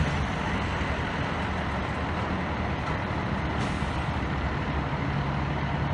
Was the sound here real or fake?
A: real